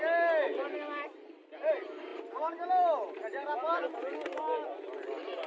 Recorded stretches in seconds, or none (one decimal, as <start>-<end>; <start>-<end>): 0.0-5.5